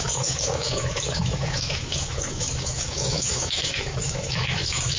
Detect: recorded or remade remade